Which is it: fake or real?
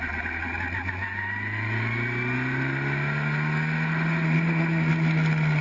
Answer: real